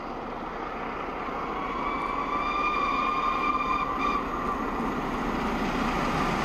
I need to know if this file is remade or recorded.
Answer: recorded